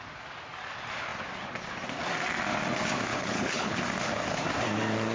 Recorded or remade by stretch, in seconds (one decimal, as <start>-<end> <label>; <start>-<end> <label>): 0.0-3.1 recorded; 3.1-3.8 remade; 3.8-5.1 recorded